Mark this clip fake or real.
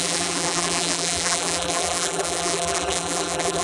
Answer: fake